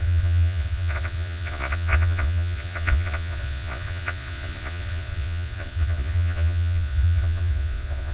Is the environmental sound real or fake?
fake